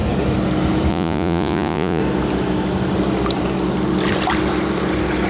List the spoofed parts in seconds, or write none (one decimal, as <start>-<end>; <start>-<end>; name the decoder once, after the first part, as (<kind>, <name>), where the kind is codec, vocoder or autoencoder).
0.9-2.0 (vocoder, Vocos)